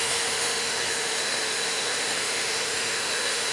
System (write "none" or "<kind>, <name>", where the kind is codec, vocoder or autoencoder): autoencoder, DAC-VAE